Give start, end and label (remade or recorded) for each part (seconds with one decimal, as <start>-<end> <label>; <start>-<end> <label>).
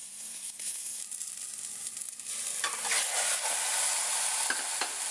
0.0-1.0 remade; 1.0-5.1 recorded